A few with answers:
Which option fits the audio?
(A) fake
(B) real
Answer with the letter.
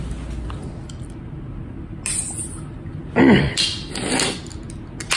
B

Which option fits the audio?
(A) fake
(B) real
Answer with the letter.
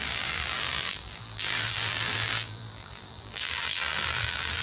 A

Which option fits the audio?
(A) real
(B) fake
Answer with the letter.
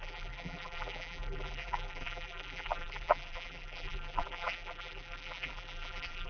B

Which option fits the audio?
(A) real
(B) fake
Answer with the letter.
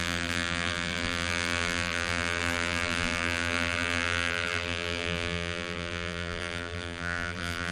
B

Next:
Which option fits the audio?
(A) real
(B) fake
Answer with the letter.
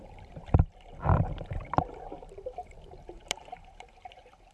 B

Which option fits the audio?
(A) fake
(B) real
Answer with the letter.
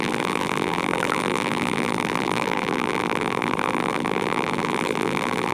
A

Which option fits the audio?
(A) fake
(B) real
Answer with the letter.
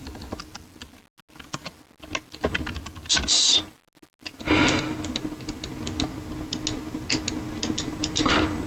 B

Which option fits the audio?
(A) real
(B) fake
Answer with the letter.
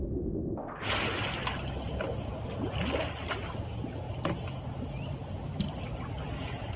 A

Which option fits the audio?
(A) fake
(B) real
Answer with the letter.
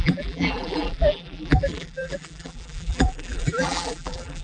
A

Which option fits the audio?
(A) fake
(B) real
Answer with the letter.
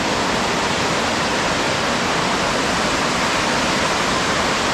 A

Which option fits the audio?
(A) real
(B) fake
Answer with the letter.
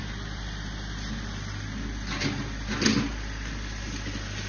A